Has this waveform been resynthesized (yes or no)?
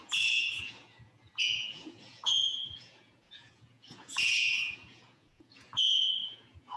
yes